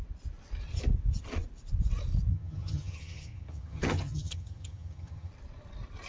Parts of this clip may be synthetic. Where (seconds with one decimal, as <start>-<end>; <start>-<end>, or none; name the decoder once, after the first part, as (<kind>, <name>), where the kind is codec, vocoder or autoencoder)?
2.3-5.3 (vocoder, HiFi-GAN)